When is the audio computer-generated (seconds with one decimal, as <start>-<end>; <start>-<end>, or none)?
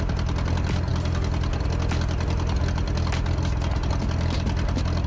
none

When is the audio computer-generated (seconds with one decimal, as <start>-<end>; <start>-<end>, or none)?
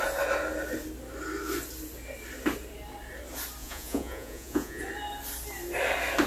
3.6-4.8